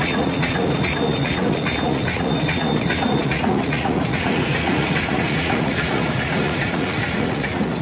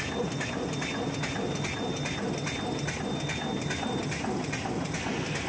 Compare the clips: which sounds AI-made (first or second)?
first